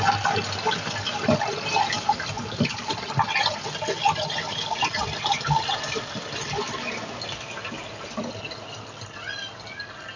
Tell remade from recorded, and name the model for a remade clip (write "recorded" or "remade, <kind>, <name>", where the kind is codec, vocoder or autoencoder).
recorded